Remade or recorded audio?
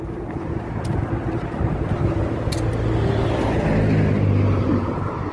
recorded